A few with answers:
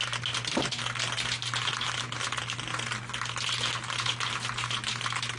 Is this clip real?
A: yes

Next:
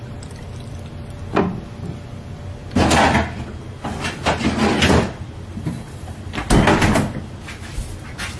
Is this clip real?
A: yes